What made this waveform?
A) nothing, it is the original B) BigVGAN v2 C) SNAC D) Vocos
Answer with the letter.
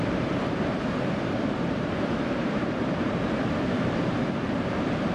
B